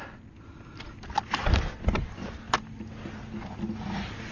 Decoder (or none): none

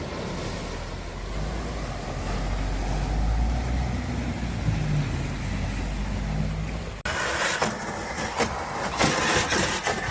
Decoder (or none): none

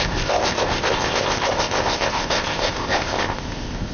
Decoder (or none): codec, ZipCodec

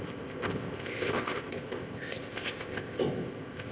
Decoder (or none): codec, ZipCodec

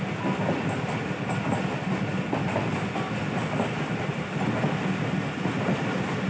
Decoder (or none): none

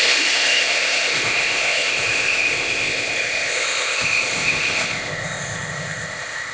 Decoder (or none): codec, ZipCodec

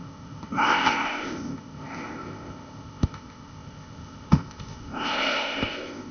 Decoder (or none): codec, ZipCodec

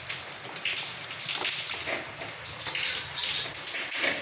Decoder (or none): none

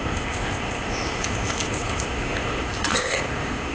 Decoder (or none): codec, ZipCodec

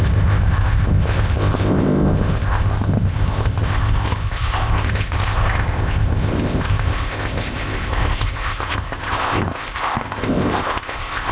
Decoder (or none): codec, ZipCodec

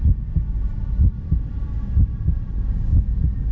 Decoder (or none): none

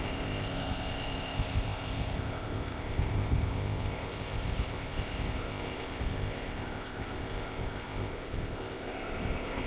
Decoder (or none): codec, ZipCodec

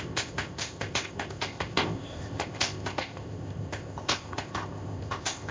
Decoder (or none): codec, ZipCodec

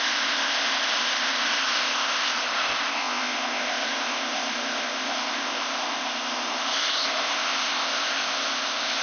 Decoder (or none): codec, ZipCodec